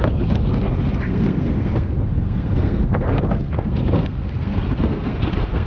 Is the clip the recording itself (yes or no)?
no